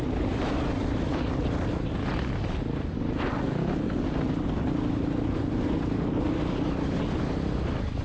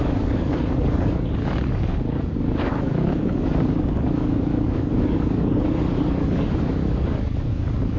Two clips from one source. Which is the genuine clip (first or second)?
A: first